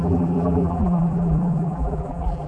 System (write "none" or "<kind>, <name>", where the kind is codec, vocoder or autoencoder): vocoder, BigVGAN v2